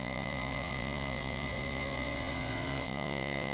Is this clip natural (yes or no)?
no